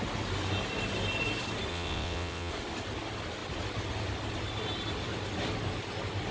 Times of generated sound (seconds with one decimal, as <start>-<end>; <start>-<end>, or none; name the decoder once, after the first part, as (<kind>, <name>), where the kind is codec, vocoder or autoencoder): 1.7-2.5 (vocoder, WaveNeXt)